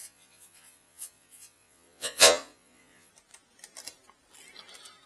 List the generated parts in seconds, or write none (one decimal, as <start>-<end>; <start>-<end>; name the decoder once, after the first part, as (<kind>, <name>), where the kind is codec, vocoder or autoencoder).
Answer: 0.0-3.1 (vocoder, Vocos)